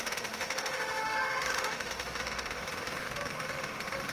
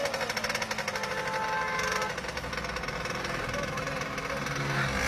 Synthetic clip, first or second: first